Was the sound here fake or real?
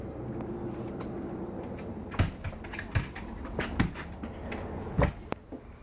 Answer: real